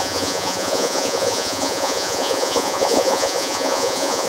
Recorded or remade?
remade